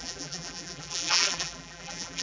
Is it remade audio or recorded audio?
remade